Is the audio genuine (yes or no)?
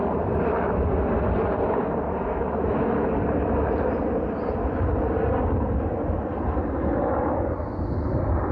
yes